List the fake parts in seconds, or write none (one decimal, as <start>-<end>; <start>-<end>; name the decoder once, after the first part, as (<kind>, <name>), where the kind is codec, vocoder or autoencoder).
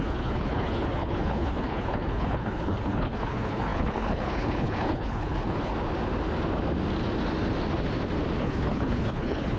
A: 0.0-5.7 (codec, HILCodec); 8.4-9.6